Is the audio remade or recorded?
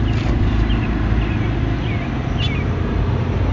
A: recorded